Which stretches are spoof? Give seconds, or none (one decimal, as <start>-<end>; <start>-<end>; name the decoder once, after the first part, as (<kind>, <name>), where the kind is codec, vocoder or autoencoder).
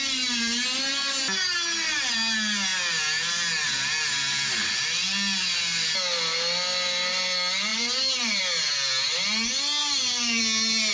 7.7-8.4 (vocoder, BigVGAN v2); 9.8-10.4